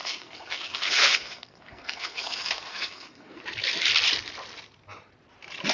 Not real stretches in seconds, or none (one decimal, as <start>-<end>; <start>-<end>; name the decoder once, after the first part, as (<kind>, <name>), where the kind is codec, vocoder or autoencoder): 0.0-3.4 (codec, SNAC)